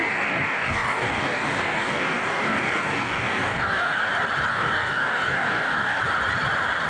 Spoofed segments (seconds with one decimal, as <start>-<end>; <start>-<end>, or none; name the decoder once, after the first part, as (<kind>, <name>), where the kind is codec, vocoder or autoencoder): 0.0-4.1 (codec, DAC); 4.5-6.0

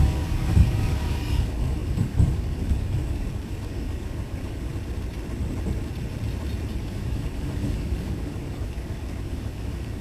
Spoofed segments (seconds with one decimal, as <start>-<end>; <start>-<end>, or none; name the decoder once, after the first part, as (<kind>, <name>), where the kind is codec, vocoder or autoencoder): 0.0-4.7 (codec, DAC); 6.8-10.0

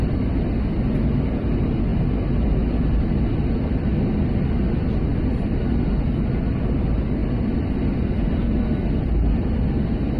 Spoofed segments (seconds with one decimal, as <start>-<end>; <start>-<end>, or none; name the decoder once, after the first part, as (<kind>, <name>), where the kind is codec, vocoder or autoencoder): none

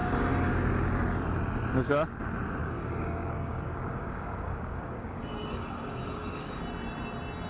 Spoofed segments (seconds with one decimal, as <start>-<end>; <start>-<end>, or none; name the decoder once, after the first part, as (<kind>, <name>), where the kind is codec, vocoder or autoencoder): 0.0-0.5 (codec, DAC); 2.6-6.6

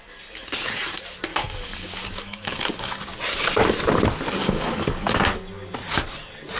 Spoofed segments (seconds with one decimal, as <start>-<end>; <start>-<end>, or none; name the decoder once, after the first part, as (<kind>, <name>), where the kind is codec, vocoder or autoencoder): 1.3-3.0 (codec, DAC); 4.4-5.2